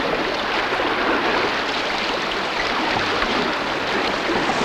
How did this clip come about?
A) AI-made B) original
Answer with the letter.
B